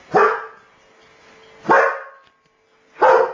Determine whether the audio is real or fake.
real